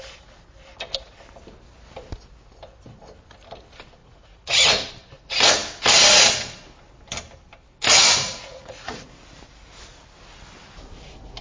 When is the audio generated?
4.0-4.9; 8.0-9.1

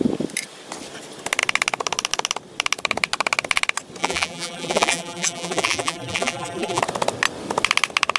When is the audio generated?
4.0-6.8

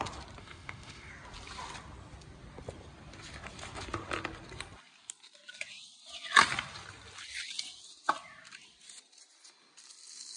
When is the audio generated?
0.4-1.1

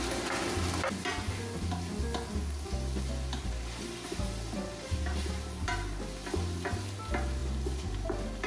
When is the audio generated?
none

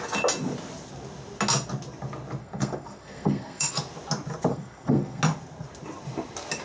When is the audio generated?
2.4-3.7; 4.5-5.2

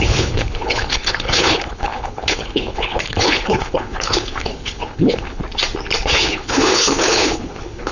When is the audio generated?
0.0-5.4; 6.1-7.9